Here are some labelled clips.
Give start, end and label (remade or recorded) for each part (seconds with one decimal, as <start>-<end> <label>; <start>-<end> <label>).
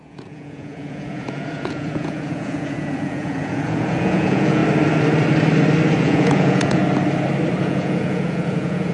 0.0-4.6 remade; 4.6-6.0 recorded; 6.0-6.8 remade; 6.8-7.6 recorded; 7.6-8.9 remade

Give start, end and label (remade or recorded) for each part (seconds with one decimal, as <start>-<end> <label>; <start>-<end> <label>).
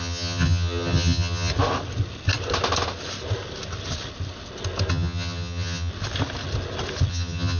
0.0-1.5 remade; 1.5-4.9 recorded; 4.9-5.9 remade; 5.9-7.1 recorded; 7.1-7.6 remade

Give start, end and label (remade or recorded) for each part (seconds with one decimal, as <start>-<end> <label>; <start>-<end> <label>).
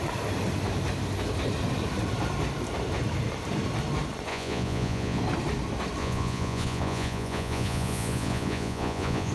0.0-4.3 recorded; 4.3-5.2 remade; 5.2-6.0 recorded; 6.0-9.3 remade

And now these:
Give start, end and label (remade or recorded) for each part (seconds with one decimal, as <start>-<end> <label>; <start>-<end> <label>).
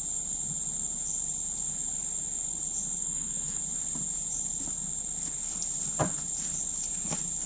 0.0-3.0 recorded; 3.0-3.6 remade; 3.6-7.5 recorded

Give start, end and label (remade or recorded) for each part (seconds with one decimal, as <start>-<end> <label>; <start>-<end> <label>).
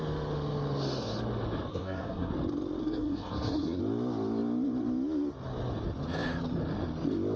0.0-1.7 recorded; 1.7-2.3 remade; 2.3-2.8 recorded; 2.8-3.8 remade; 3.8-7.4 recorded